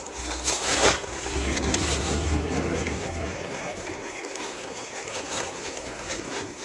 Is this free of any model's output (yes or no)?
no